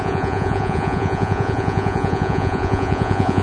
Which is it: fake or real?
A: fake